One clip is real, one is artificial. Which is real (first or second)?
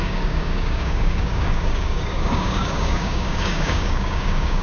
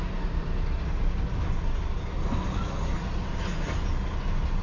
second